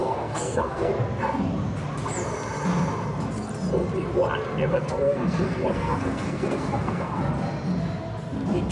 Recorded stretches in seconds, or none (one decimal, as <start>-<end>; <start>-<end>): 0.9-4.7; 7.2-8.7